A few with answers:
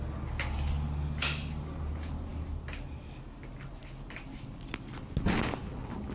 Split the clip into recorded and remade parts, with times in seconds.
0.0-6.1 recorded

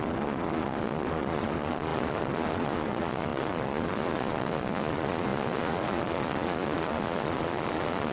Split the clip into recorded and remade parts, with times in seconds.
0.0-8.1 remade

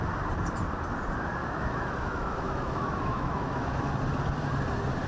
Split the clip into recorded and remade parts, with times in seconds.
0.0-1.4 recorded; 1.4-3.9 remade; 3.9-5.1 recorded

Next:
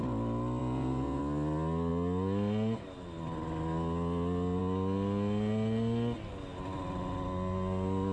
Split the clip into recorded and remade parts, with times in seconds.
0.0-0.6 recorded; 0.6-1.2 remade; 1.2-8.1 recorded